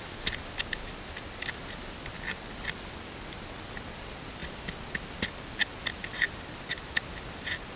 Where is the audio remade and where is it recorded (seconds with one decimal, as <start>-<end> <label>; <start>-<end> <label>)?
0.0-7.8 recorded